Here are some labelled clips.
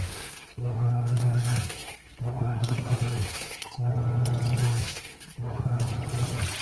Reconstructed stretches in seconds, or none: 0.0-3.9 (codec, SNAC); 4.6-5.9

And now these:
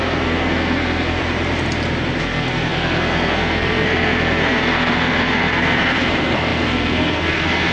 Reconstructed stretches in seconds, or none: 0.0-1.2 (codec, SNAC); 2.2-7.7

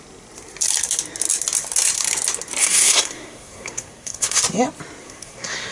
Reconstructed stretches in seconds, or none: 2.6-4.4 (codec, SNAC); 5.0-5.7

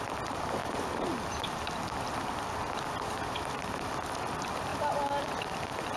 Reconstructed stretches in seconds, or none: none